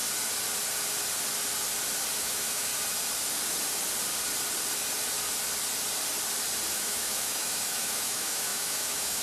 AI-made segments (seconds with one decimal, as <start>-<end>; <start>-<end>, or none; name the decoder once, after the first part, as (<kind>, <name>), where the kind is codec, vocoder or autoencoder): 2.2-2.7 (autoencoder, DAC-VAE); 6.7-9.2